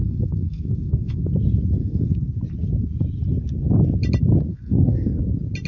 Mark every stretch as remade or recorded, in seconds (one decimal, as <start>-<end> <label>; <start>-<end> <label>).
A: 0.0-1.2 remade; 1.2-1.8 recorded; 1.8-2.3 remade; 2.3-4.5 recorded; 4.5-5.2 remade; 5.2-5.7 recorded